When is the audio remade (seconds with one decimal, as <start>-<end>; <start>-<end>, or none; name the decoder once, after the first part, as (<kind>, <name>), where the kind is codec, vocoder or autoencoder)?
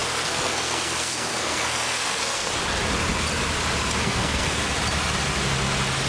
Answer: 0.0-2.5 (codec, SNAC); 4.0-4.6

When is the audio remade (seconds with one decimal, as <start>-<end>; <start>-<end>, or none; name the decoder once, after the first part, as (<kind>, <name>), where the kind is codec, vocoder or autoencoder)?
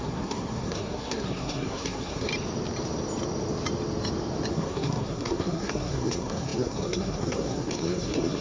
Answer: 0.0-2.3 (codec, SNAC); 4.5-8.4